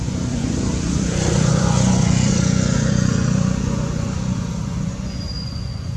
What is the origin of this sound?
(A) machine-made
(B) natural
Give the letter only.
A